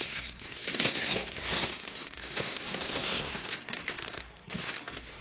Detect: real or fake fake